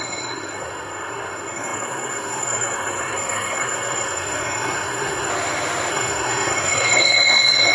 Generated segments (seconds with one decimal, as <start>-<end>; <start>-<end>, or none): 0.0-5.3; 5.9-7.7